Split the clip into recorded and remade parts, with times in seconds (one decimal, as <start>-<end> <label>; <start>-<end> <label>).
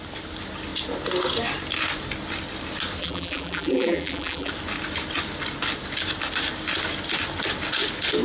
0.0-3.0 recorded; 3.0-4.5 remade; 4.5-8.2 recorded